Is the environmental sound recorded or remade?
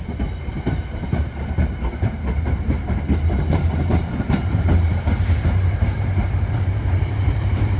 remade